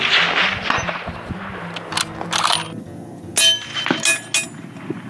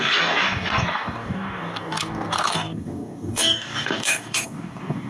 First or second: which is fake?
second